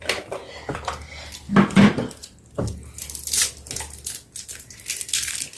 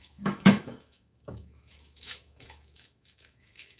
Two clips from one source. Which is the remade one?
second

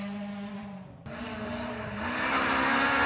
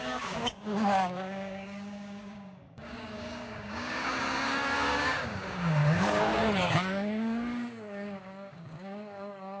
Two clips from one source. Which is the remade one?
second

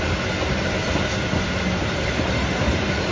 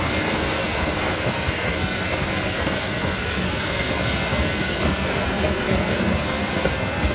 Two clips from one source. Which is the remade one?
second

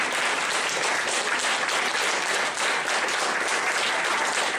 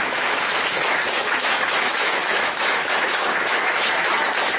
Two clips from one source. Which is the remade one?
second